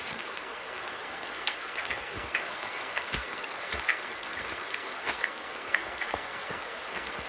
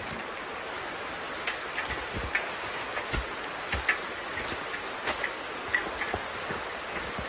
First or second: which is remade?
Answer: first